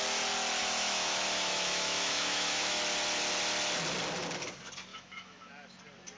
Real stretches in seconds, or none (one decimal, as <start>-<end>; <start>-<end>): 0.0-0.6; 2.8-4.9; 5.5-6.2